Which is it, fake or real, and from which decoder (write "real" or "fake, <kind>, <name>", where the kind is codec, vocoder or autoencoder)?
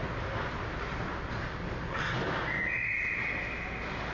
real